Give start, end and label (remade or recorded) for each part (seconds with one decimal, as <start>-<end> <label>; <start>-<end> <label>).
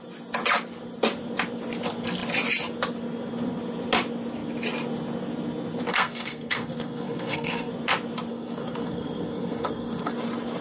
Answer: 0.0-5.9 recorded; 5.9-7.7 remade; 7.7-8.3 recorded; 8.3-10.1 remade; 10.1-10.6 recorded